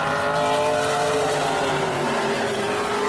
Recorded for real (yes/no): yes